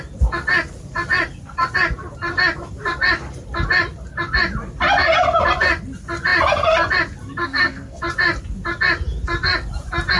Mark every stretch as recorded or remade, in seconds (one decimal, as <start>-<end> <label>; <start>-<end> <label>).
0.0-7.4 recorded; 7.4-8.0 remade; 8.0-10.2 recorded